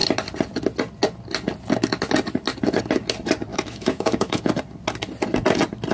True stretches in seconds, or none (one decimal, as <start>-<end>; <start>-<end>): 0.0-3.5; 4.4-5.9